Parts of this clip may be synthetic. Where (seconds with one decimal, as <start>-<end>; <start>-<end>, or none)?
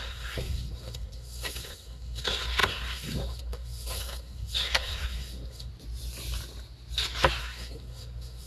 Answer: 0.0-5.7; 7.4-8.5